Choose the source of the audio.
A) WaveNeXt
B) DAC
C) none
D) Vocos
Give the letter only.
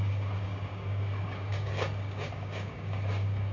B